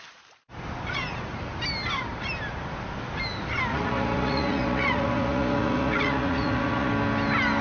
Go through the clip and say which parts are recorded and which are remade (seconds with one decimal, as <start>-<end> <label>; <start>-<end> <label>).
0.0-3.7 recorded; 3.7-6.9 remade; 6.9-7.6 recorded